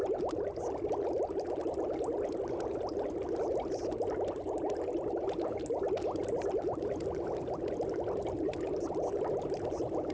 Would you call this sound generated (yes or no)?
no